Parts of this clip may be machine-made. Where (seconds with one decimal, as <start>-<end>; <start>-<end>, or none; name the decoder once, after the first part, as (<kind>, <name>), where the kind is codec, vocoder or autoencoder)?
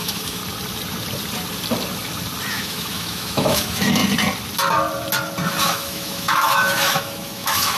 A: 0.0-0.4 (autoencoder, DAC-VAE); 2.5-4.0; 5.6-7.8